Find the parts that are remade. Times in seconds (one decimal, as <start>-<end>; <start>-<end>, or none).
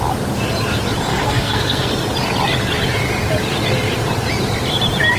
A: 1.1-1.9